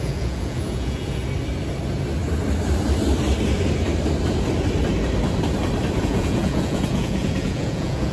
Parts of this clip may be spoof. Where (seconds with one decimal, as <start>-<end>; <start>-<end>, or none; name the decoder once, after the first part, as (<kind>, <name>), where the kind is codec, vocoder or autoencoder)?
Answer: 0.0-1.2 (vocoder, Vocos); 6.0-8.1